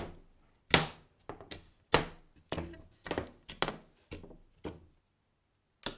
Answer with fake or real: real